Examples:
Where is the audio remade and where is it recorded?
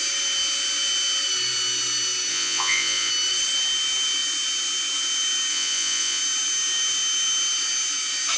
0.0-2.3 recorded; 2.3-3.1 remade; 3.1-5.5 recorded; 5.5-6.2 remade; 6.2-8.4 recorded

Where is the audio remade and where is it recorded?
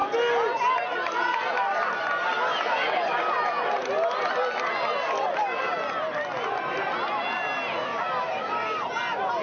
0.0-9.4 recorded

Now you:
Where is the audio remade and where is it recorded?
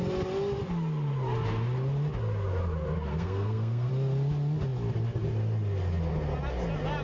0.0-3.1 recorded; 3.1-3.9 remade; 3.9-7.0 recorded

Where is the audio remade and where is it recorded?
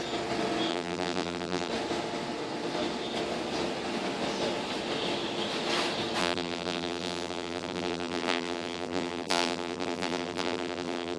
0.0-0.7 recorded; 0.7-1.7 remade; 1.7-6.2 recorded; 6.2-11.2 remade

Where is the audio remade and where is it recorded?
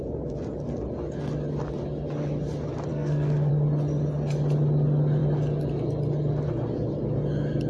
0.0-2.9 recorded; 2.9-3.5 remade; 3.5-7.7 recorded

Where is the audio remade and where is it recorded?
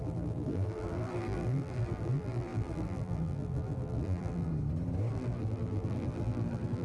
0.0-4.5 remade; 4.5-5.1 recorded; 5.1-6.8 remade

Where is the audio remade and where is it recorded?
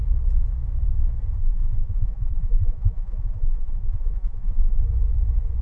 0.0-1.4 recorded; 1.4-4.8 remade; 4.8-5.6 recorded